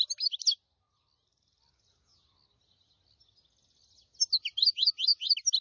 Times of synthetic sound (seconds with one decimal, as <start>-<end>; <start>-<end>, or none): none